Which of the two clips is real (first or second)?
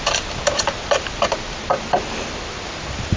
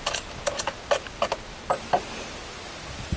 second